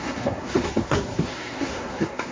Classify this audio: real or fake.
fake